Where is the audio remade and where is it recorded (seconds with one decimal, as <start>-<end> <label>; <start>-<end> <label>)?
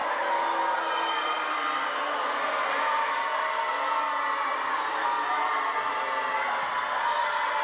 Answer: 0.0-7.6 recorded